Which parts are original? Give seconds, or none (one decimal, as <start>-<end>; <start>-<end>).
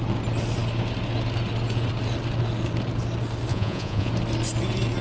0.0-3.5; 4.1-5.0